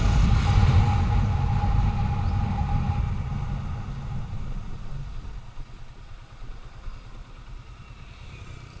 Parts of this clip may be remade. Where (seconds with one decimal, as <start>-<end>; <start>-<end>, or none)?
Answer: 0.0-0.6; 2.6-3.3; 5.9-8.8